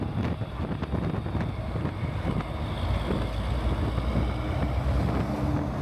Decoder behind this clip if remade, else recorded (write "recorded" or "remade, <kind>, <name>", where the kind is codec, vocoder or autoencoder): recorded